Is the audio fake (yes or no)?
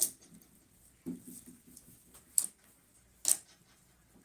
no